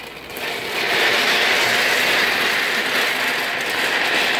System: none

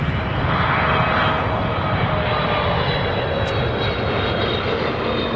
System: none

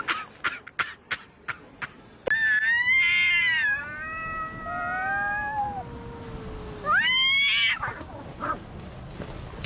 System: none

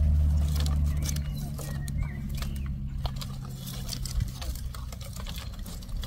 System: none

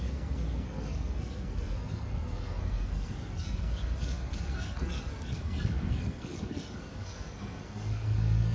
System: codec, SNAC